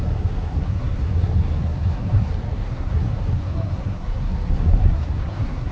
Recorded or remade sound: remade